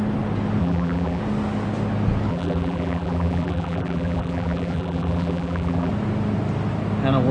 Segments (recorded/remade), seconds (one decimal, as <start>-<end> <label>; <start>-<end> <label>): 0.0-0.6 recorded; 0.6-1.2 remade; 1.2-2.3 recorded; 2.3-5.9 remade; 5.9-7.3 recorded